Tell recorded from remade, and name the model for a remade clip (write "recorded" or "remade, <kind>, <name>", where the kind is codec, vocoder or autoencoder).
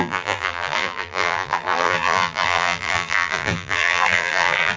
remade, vocoder, BigVGAN v2